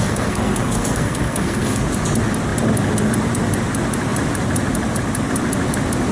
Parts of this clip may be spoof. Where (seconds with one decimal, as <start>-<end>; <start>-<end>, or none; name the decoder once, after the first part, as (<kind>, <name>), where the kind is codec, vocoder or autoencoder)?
0.0-1.8 (codec, SNAC)